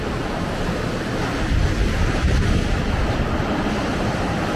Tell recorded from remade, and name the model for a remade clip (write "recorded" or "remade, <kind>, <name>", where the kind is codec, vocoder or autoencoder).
recorded